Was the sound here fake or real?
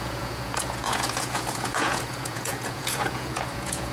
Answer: fake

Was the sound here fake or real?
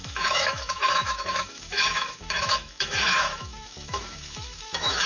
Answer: fake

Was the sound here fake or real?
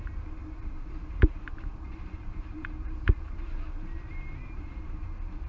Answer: fake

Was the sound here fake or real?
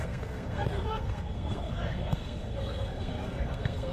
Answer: fake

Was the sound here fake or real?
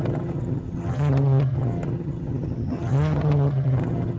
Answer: fake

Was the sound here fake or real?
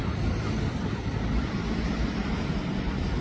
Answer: fake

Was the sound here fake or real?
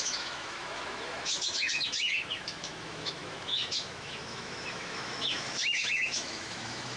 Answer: fake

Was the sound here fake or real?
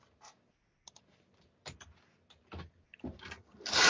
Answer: real